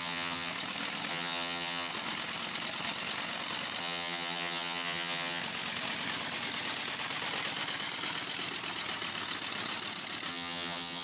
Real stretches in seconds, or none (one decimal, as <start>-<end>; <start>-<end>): 0.5-1.1; 1.9-3.8; 5.4-10.3